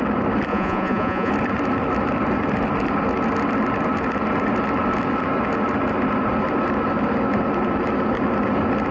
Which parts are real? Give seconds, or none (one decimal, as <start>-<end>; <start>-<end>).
0.0-0.5; 1.3-8.9